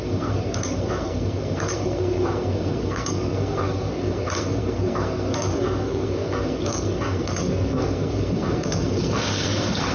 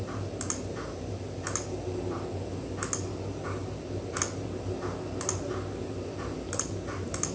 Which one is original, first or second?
second